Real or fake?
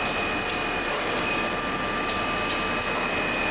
real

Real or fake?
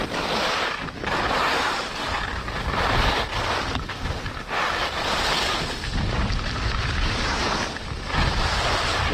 real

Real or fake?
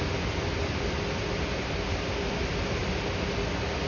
real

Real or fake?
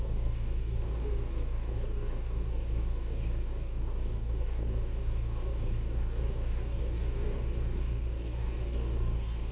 fake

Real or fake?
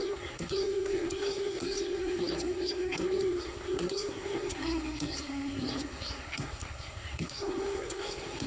fake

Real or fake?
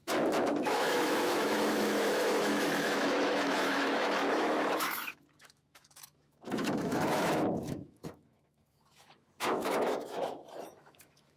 fake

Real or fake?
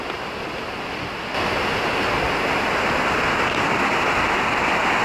real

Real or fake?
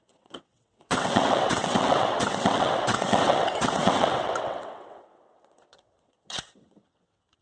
fake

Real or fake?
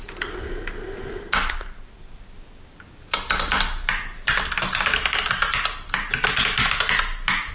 real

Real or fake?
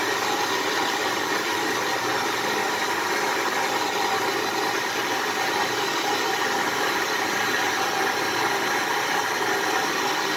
real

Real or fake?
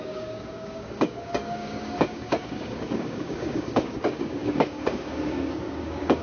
fake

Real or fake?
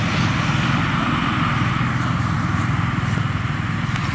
real